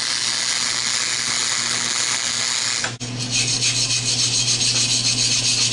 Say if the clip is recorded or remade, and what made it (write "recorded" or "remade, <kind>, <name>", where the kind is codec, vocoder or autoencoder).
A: recorded